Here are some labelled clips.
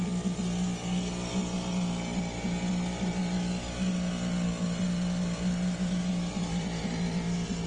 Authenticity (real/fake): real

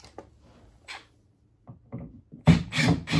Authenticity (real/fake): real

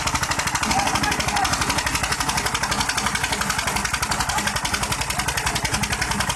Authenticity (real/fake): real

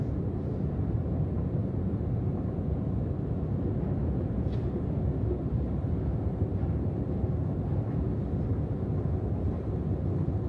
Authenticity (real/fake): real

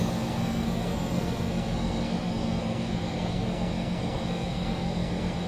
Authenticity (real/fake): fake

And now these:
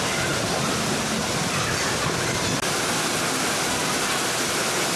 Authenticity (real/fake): real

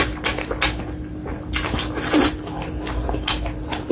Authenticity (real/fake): real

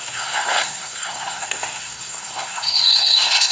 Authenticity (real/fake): fake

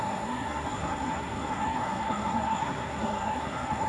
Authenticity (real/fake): fake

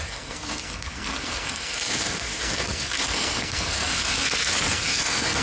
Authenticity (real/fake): fake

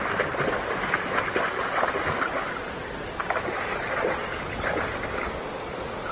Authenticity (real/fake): real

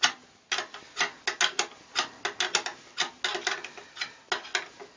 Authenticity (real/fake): real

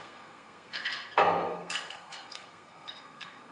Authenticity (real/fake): fake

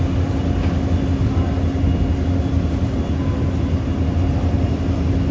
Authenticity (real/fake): real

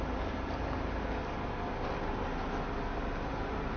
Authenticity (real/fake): real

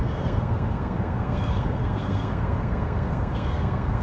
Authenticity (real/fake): fake